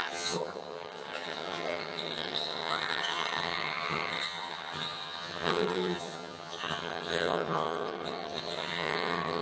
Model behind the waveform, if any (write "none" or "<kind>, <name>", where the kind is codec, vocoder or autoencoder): vocoder, HiFi-GAN